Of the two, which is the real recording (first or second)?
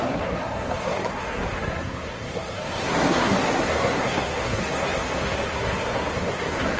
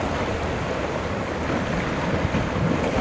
second